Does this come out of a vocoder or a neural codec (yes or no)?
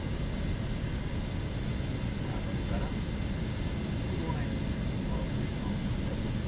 no